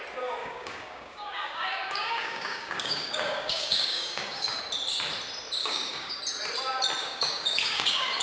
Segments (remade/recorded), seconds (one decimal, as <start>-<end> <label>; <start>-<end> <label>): 0.0-0.4 recorded; 0.4-4.6 remade; 4.6-5.6 recorded; 5.6-6.2 remade; 6.2-7.0 recorded; 7.0-8.2 remade